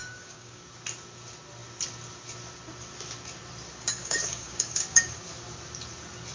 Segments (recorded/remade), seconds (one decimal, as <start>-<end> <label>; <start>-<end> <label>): 0.0-0.6 remade; 0.6-4.0 recorded; 4.0-5.2 remade; 5.2-6.3 recorded